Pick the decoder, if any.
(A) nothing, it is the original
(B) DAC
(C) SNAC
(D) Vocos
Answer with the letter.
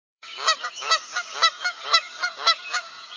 B